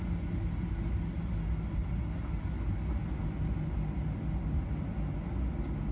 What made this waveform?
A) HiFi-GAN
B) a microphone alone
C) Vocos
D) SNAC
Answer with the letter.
B